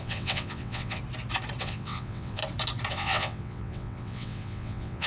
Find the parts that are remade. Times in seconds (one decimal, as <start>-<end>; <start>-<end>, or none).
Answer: 0.0-1.0; 1.6-2.4; 2.9-5.1